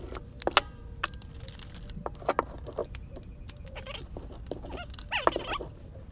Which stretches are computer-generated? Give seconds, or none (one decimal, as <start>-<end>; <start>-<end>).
2.8-6.1